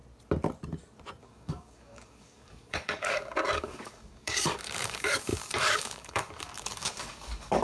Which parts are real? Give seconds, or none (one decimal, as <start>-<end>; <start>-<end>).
0.0-1.2